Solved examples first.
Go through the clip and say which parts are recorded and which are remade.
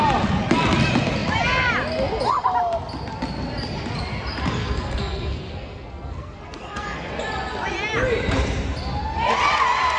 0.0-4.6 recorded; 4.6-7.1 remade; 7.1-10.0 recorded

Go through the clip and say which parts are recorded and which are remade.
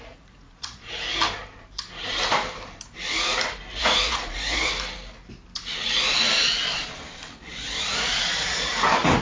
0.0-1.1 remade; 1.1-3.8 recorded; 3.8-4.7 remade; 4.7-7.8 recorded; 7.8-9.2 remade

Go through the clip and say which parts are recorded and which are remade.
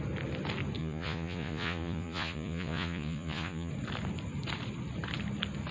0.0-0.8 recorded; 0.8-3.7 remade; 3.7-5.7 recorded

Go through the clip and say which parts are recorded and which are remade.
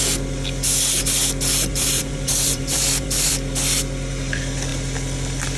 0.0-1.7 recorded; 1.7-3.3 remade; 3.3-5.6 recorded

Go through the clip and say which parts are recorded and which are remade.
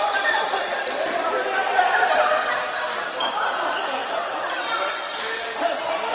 0.0-1.6 remade; 1.6-2.7 recorded; 2.7-6.1 remade